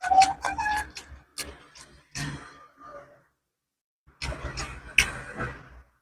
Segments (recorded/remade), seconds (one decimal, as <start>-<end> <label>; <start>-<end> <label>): 0.0-1.3 remade; 1.3-2.0 recorded; 2.0-2.9 remade; 2.9-6.0 recorded